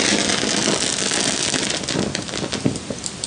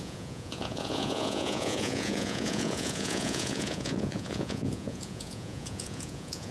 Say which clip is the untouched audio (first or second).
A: first